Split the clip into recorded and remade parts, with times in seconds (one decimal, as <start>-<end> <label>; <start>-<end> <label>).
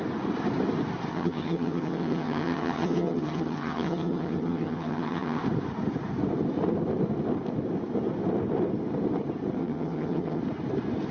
0.0-1.1 recorded; 1.1-5.4 remade; 5.4-9.6 recorded; 9.6-10.4 remade; 10.4-11.1 recorded